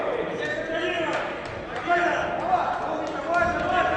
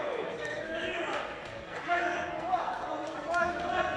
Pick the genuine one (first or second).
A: first